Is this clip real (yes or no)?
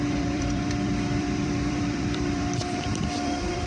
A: no